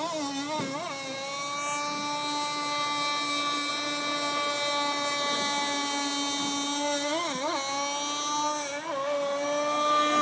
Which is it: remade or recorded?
recorded